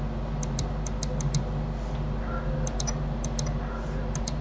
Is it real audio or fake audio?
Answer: real